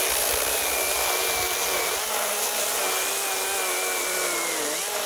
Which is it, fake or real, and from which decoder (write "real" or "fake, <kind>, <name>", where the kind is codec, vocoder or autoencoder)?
real